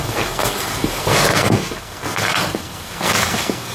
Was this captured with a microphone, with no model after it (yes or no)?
no